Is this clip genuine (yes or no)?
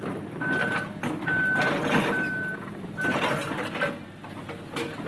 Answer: yes